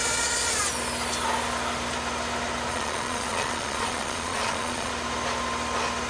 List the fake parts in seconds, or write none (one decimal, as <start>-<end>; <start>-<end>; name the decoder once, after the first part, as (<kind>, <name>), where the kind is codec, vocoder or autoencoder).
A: 0.0-0.6 (vocoder, Vocos); 2.7-4.9